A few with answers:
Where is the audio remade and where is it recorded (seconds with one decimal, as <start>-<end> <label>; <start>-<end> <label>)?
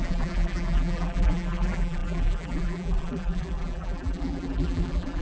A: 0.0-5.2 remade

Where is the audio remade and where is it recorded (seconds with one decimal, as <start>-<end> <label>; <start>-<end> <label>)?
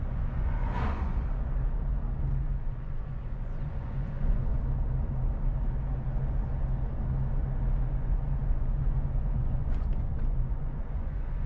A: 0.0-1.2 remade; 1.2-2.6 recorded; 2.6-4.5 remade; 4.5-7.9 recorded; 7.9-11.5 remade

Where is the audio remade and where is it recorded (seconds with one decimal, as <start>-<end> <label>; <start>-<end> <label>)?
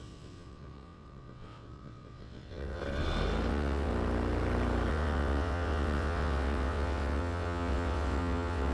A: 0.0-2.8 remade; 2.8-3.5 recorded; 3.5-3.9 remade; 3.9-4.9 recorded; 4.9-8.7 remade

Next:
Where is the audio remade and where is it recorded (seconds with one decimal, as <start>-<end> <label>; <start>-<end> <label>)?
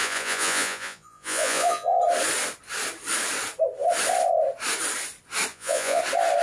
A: 0.0-2.0 remade; 2.0-5.5 recorded; 5.5-6.0 remade; 6.0-6.4 recorded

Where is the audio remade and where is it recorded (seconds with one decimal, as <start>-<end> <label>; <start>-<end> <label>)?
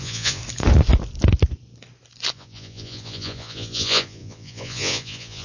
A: 0.0-0.4 remade; 0.4-2.3 recorded; 2.3-5.4 remade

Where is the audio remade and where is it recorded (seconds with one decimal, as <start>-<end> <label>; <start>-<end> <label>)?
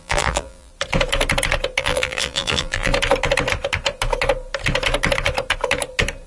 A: 0.0-0.7 remade; 0.7-1.8 recorded; 1.8-2.9 remade; 2.9-6.3 recorded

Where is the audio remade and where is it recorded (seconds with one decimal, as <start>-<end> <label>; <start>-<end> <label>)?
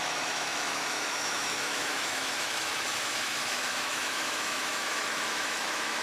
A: 0.0-6.0 remade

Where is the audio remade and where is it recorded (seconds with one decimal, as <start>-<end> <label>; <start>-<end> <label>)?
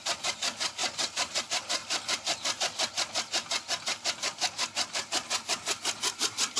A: 0.0-0.8 recorded; 0.8-1.4 remade; 1.4-6.6 recorded